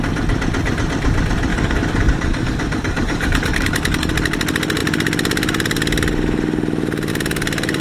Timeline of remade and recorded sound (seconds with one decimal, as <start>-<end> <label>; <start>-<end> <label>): 0.0-1.5 recorded; 1.5-4.1 remade; 4.1-7.8 recorded